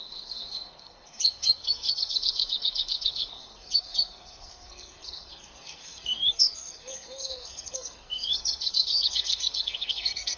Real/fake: fake